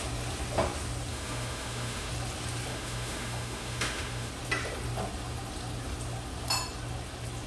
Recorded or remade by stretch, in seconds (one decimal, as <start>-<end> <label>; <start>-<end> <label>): 0.0-1.1 recorded; 1.1-2.1 remade; 2.1-2.7 recorded; 2.7-4.3 remade; 4.3-7.5 recorded